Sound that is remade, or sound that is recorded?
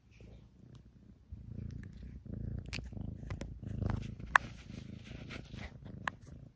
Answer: recorded